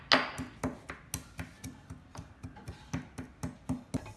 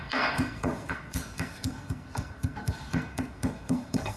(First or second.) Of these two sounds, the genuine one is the first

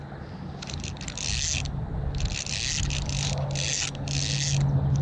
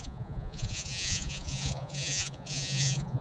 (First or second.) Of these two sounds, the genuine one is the first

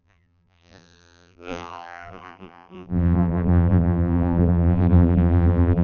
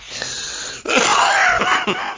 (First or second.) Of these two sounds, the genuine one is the second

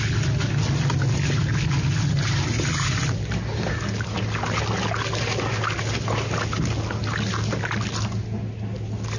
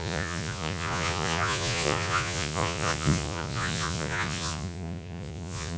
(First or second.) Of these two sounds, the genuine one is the first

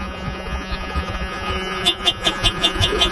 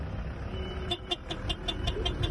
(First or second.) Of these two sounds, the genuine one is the second